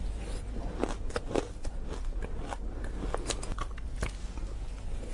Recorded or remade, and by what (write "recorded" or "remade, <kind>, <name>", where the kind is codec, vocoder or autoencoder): recorded